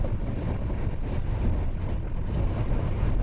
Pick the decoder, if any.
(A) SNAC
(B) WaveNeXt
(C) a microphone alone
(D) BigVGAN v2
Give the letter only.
C